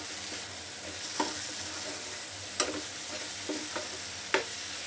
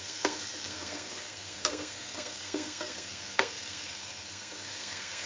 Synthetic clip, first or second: second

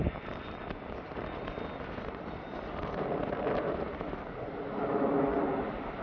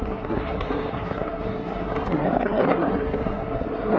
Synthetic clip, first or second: second